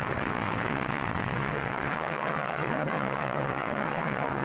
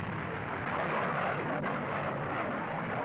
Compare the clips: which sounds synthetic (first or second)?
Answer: first